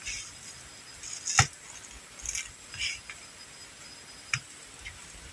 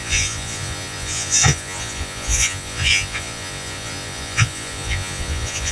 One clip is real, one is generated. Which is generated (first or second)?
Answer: second